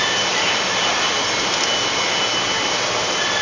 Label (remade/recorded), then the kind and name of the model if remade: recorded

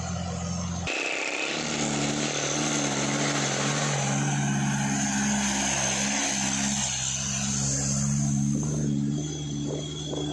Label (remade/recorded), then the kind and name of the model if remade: recorded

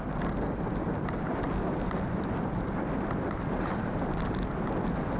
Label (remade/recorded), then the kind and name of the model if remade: recorded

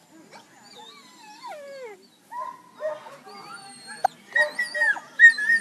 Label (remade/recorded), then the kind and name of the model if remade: recorded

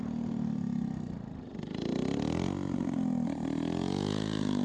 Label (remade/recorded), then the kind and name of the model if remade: recorded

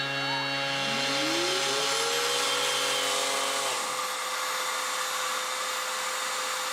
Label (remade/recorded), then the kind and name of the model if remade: recorded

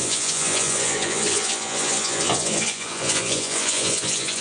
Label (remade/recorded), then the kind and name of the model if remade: remade, vocoder, Vocos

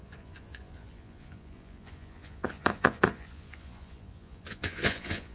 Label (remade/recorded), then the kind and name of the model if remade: remade, vocoder, Vocos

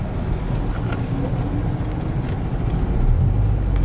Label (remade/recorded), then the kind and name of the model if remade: recorded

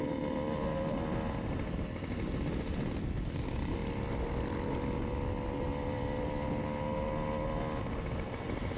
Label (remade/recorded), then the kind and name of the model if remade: recorded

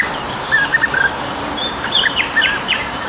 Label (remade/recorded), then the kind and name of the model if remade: remade, vocoder, BigVGAN v2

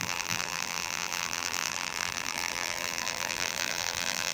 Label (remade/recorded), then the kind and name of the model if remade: remade, vocoder, BigVGAN v2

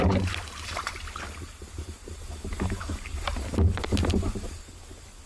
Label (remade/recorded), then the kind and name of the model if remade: recorded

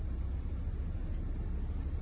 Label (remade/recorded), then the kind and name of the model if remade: recorded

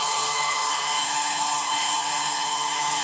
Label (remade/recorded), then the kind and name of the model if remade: remade, codec, HILCodec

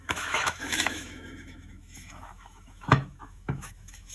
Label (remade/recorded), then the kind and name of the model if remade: remade, autoencoder, DAC-VAE